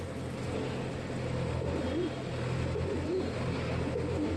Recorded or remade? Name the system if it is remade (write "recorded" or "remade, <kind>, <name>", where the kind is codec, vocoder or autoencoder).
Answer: recorded